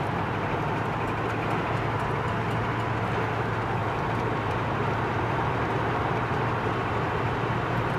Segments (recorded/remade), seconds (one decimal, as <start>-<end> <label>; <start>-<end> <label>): 0.0-3.8 recorded; 3.8-7.4 remade; 7.4-8.0 recorded